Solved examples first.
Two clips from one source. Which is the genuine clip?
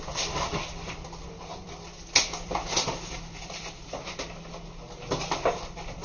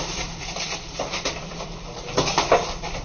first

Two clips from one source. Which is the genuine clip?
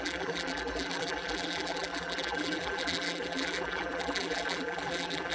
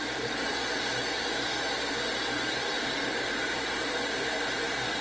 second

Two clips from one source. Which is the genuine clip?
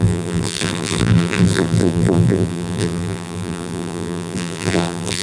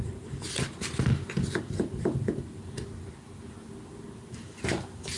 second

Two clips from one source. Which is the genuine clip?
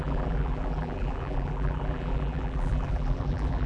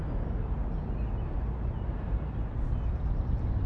second